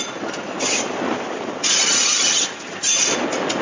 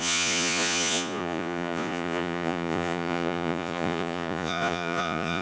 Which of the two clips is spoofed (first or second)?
second